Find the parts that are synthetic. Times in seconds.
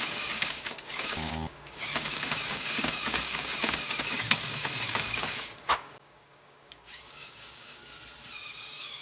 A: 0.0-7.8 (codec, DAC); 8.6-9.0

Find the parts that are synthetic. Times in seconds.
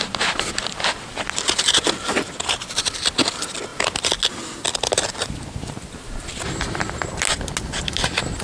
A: none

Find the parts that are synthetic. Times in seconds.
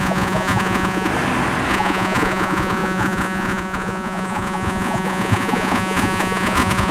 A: 0.0-1.1 (vocoder, Vocos); 1.7-6.9